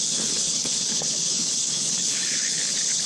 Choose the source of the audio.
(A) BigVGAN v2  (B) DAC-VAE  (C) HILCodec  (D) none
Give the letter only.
C